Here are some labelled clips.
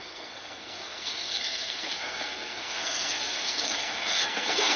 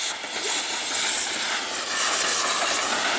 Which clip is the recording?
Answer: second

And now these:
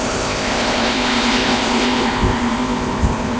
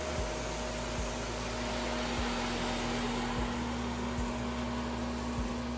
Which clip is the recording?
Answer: second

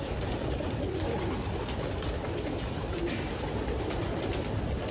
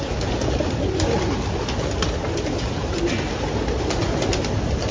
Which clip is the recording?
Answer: second